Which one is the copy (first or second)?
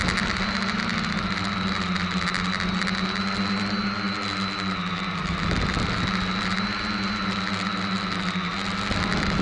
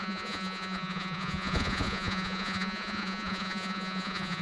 second